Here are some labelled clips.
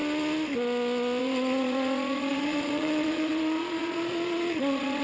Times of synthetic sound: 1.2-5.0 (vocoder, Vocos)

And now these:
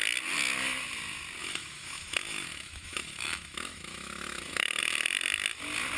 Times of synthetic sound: 1.4-4.8 (autoencoder, DAC-VAE)

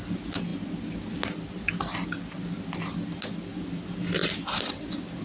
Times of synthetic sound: none

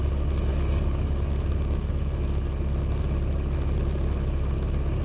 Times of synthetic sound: 0.5-1.3 (codec, DAC)